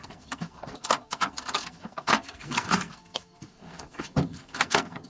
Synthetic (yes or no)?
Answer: yes